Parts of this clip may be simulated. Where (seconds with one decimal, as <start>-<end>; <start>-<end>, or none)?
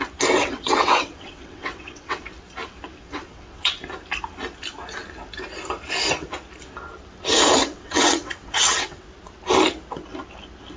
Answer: 0.4-2.2; 3.0-3.8; 7.6-9.0